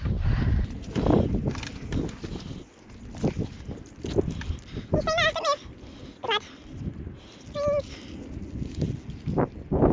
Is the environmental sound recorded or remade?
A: recorded